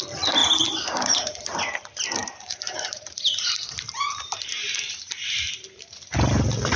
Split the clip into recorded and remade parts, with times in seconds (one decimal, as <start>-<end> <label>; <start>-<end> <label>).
0.0-0.4 recorded; 0.4-1.6 remade; 1.6-2.2 recorded; 2.2-6.3 remade; 6.3-6.8 recorded